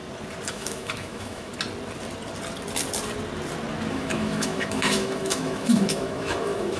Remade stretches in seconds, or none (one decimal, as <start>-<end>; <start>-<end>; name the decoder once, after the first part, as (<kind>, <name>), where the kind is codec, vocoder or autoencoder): 0.5-1.5 (autoencoder, DAC-VAE); 3.9-6.8